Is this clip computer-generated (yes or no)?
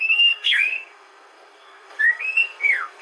yes